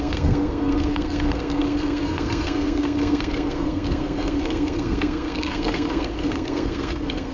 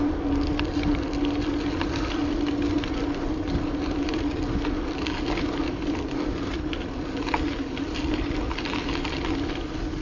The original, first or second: second